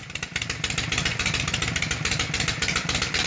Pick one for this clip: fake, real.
real